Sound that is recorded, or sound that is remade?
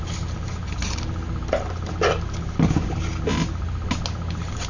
recorded